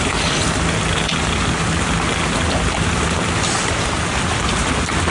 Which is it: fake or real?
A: real